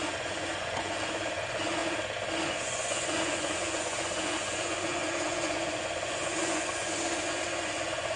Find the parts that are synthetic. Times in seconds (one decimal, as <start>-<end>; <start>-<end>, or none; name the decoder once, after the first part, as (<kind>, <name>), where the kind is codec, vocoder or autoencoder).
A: 0.0-1.8 (vocoder, Vocos); 2.4-8.2